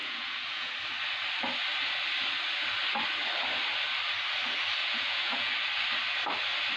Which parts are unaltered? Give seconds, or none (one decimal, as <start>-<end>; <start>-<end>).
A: 0.7-4.8; 5.5-6.8